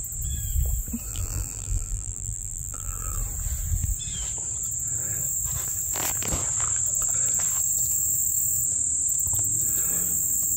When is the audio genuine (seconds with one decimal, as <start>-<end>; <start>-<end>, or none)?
0.0-1.1; 3.2-10.6